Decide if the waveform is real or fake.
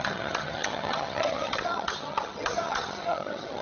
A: fake